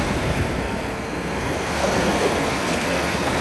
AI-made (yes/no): yes